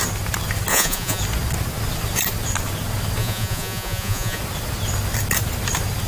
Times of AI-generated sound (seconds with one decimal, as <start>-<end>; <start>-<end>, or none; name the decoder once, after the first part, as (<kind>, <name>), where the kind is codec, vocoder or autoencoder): 0.7-1.2 (vocoder, Vocos); 3.2-4.4